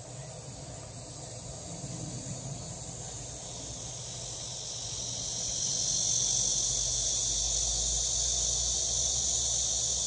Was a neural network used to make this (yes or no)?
no